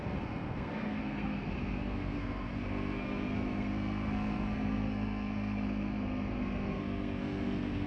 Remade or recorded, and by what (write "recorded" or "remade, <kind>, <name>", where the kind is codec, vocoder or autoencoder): remade, codec, SNAC